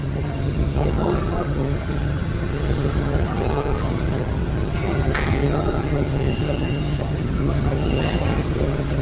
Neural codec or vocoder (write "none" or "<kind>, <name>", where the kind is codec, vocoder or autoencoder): vocoder, HiFi-GAN